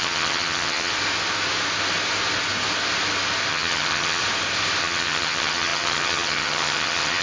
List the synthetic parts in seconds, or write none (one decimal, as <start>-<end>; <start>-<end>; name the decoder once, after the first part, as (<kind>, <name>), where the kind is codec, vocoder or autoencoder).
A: 0.0-0.9 (vocoder, HiFi-GAN); 3.5-4.2; 4.8-7.2